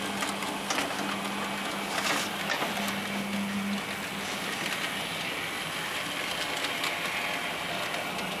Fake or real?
real